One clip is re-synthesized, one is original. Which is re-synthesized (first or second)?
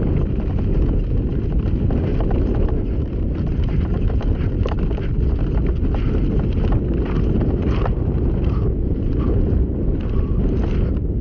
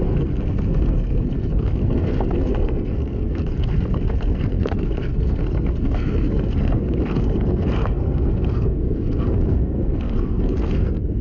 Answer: second